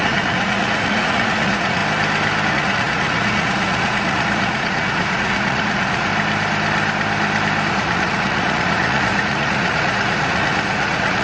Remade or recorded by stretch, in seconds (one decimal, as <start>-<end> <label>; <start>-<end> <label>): 0.0-1.8 remade; 1.8-2.5 recorded; 2.5-6.1 remade; 6.1-7.7 recorded; 7.7-11.2 remade